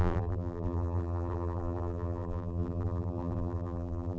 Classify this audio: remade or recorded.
remade